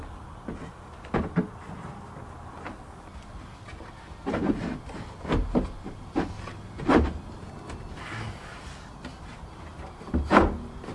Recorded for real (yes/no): yes